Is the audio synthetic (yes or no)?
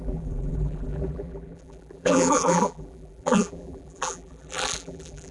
yes